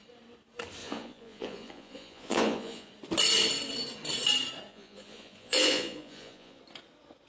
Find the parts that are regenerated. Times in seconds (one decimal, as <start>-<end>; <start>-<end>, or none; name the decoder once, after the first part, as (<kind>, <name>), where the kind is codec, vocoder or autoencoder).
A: 0.8-2.9 (vocoder, Vocos); 4.7-6.6